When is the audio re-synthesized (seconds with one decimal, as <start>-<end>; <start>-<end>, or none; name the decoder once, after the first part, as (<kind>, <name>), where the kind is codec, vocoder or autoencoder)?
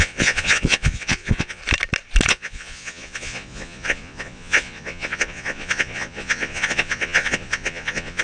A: 0.0-1.6 (vocoder, Vocos); 2.3-8.2